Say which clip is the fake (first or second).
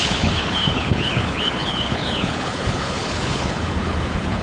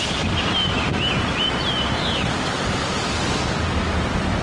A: first